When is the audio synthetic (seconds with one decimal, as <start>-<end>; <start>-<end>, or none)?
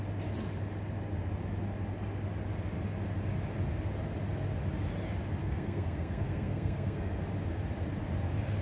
5.4-7.2